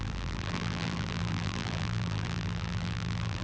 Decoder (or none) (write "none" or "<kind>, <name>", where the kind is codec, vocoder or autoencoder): vocoder, BigVGAN v2